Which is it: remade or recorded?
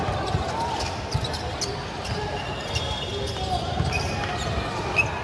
recorded